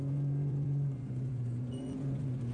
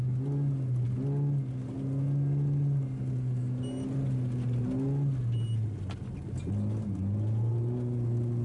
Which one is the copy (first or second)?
first